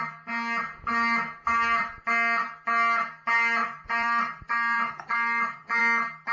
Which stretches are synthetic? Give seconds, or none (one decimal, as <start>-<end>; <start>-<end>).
3.6-5.8